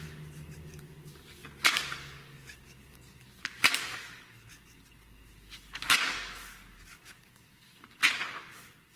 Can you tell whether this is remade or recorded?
remade